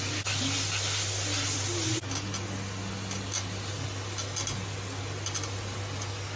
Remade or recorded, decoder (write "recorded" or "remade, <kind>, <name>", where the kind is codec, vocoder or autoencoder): recorded